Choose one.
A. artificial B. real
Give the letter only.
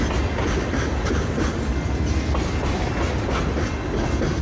B